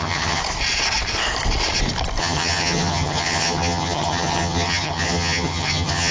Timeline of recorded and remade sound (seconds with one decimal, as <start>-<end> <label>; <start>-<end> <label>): 0.0-0.4 remade; 0.4-2.2 recorded; 2.2-6.1 remade